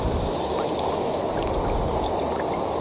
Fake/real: real